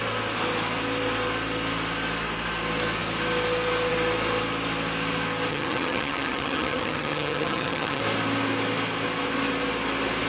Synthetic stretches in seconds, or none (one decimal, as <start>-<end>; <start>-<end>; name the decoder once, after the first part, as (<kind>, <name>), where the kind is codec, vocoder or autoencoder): 5.5-8.0 (vocoder, HiFi-GAN)